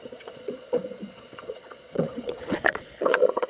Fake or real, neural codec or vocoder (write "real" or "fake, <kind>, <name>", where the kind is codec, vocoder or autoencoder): fake, vocoder, Vocos